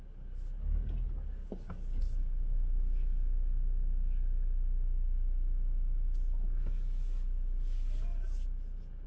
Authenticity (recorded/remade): recorded